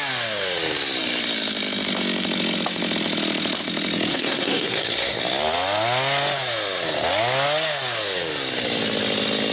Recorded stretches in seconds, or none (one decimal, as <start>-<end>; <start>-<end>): 0.0-4.1; 5.2-9.5